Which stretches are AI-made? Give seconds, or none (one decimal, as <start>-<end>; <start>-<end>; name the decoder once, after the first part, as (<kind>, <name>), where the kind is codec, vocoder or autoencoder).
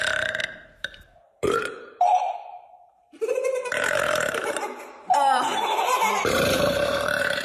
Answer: 0.0-7.4 (vocoder, BigVGAN v2)